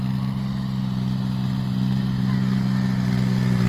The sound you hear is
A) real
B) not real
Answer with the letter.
A